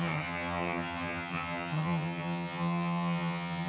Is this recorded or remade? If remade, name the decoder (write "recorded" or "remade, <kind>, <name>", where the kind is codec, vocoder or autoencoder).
remade, vocoder, HiFi-GAN